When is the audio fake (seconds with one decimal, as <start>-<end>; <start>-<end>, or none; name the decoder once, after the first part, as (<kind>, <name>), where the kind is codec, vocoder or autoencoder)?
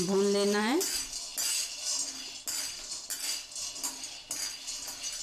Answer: none